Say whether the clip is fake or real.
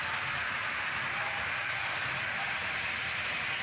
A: real